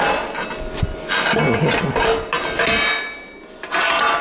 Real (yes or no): yes